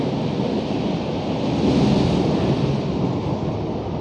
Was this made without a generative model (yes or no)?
yes